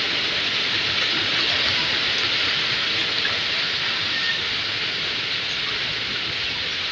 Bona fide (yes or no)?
yes